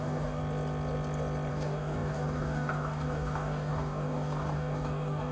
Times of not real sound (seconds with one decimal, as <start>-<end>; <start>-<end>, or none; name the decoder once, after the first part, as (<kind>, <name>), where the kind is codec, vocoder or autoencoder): 0.0-0.4 (codec, DAC); 1.5-5.3

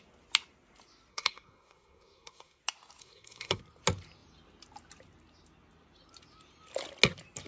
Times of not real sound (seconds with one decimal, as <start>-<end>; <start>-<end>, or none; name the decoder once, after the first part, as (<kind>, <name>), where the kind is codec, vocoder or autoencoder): 1.1-2.6 (codec, SNAC); 3.0-3.6

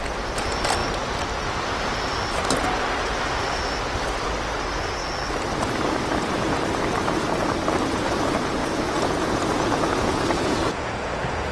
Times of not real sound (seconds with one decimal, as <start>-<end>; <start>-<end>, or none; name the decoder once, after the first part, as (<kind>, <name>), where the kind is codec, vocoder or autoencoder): 8.6-11.5 (vocoder, Vocos)